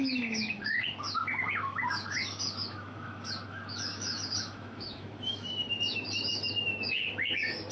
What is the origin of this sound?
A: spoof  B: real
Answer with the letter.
A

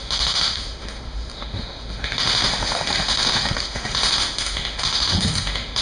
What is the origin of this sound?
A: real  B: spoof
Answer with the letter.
B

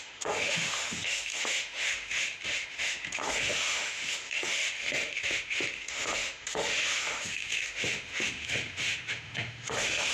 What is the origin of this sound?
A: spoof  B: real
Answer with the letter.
A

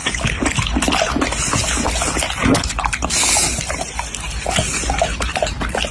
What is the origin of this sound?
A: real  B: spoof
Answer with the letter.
A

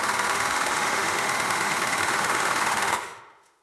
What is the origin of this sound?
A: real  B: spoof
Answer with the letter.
B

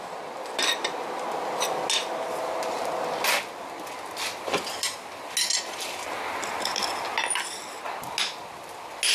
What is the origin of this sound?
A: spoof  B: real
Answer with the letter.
B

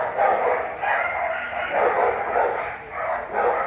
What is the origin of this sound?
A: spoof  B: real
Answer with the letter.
B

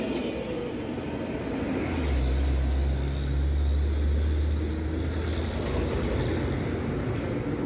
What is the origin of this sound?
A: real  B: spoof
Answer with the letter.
A